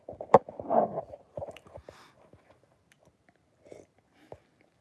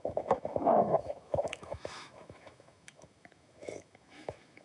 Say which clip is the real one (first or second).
first